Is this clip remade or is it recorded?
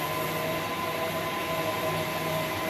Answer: recorded